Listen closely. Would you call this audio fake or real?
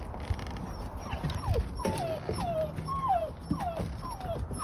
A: real